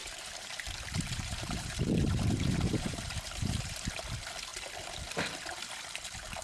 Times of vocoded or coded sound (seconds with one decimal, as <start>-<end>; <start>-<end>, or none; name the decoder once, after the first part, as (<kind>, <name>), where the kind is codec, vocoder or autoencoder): 0.0-3.8 (vocoder, BigVGAN v2)